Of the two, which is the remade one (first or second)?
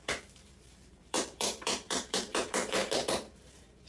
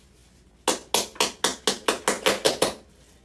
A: first